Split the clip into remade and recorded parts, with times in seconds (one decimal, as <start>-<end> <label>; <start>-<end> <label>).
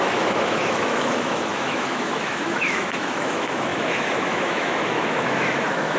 0.0-6.0 remade